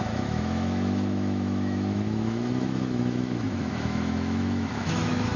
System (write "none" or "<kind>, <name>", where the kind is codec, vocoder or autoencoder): autoencoder, DAC-VAE